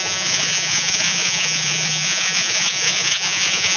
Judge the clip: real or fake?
fake